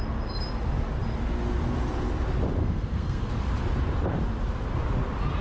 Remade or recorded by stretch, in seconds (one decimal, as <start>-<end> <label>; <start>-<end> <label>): 0.0-2.6 recorded; 2.6-3.3 remade; 3.3-5.4 recorded

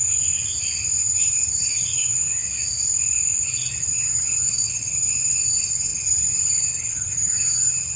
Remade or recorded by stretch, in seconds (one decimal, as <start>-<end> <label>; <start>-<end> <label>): 0.0-1.0 recorded; 1.0-2.4 remade; 2.4-3.4 recorded; 3.4-8.0 remade

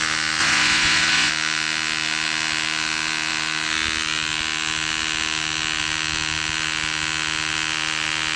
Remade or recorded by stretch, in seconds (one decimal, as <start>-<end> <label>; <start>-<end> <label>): 0.0-0.4 recorded; 0.4-1.3 remade; 1.3-8.4 recorded